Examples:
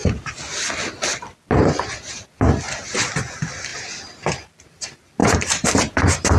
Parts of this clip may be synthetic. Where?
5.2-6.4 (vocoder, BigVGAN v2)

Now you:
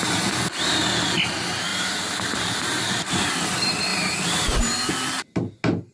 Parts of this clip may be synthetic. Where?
1.7-3.3 (vocoder, BigVGAN v2); 3.9-4.6

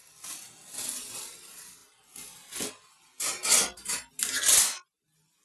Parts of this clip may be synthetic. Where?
0.0-3.4 (vocoder, BigVGAN v2); 4.3-5.4